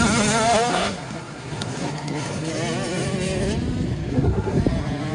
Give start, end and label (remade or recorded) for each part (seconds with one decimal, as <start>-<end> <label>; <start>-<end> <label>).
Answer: 0.0-0.7 recorded; 0.7-2.5 remade; 2.5-4.1 recorded; 4.1-4.6 remade; 4.6-5.1 recorded